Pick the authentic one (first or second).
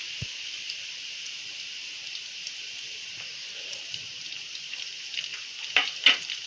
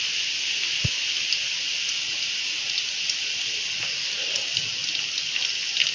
second